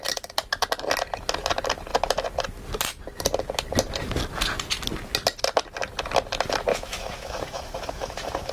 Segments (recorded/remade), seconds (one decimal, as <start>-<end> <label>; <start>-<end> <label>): 0.0-6.7 recorded; 6.7-8.5 remade